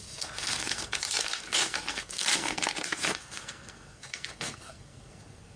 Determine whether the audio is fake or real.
fake